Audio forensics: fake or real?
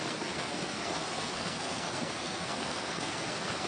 fake